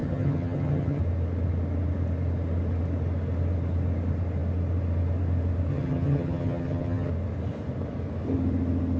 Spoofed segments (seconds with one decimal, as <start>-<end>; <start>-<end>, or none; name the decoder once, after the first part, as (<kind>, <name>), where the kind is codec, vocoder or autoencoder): 0.0-1.0 (vocoder, HiFi-GAN); 5.7-7.1